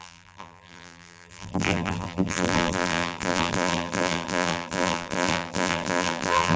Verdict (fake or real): fake